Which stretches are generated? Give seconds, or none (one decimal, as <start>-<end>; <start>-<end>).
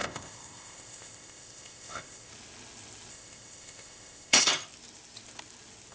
0.0-2.3; 3.1-4.5